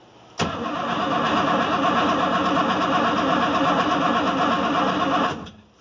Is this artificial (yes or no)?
no